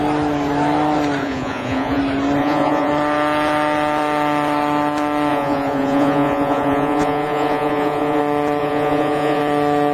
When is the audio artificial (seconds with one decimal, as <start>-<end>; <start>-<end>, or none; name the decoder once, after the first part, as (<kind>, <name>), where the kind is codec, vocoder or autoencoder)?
1.2-2.0 (vocoder, Vocos); 2.4-2.9; 5.3-8.2; 8.6-9.4